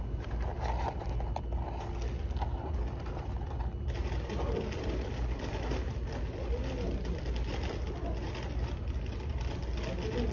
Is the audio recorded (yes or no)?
yes